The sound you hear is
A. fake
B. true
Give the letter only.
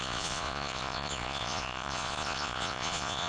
A